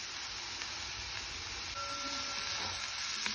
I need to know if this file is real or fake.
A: real